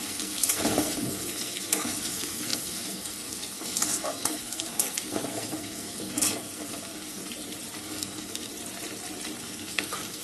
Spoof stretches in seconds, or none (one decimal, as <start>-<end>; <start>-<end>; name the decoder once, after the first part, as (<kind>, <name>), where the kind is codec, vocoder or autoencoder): 0.0-7.2 (codec, SNAC); 7.8-8.5; 9.4-10.2